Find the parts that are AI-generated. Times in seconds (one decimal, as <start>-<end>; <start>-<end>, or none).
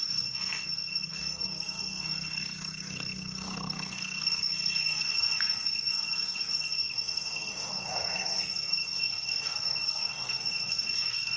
0.0-11.4